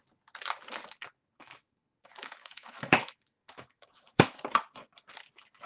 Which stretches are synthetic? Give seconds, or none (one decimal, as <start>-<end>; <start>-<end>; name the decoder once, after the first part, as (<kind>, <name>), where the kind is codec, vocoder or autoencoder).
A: 1.0-4.4 (autoencoder, DAC-VAE)